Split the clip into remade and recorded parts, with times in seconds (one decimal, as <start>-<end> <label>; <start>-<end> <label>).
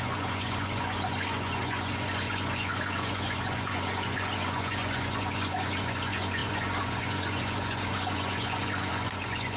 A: 0.0-9.6 remade